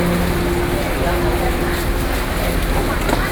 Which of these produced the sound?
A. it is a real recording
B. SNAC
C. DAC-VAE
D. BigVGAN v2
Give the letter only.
A